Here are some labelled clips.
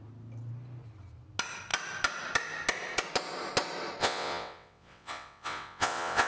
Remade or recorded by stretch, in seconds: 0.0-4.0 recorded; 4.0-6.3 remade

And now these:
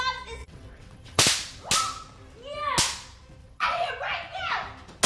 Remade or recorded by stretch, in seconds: 0.0-0.4 recorded; 0.4-1.2 remade; 1.2-3.4 recorded; 3.4-3.9 remade; 3.9-5.1 recorded

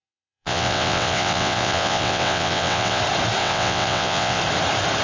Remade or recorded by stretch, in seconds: 0.0-3.0 remade; 3.0-3.4 recorded; 3.4-4.4 remade; 4.4-5.0 recorded

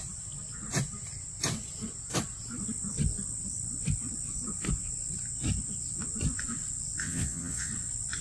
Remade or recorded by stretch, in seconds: 0.0-7.0 recorded; 7.0-7.7 remade; 7.7-8.2 recorded

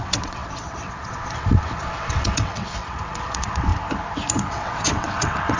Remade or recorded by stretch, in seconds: 0.0-3.7 remade; 3.7-4.3 recorded; 4.3-5.6 remade

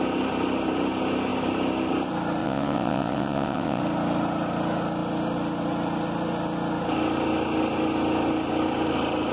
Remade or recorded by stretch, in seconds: 0.0-2.4 recorded; 2.4-3.8 remade; 3.8-9.3 recorded